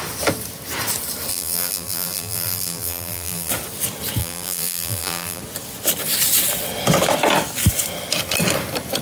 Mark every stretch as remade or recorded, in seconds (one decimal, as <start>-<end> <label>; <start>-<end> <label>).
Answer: 0.0-1.3 recorded; 1.3-3.5 remade; 3.5-4.2 recorded; 4.2-5.4 remade; 5.4-9.0 recorded